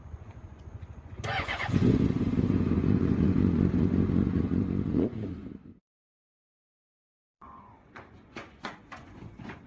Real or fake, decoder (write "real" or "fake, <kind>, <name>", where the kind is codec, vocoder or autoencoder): fake, vocoder, Vocos